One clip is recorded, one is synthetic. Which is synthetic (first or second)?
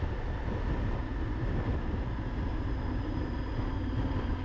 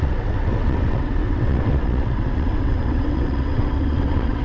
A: second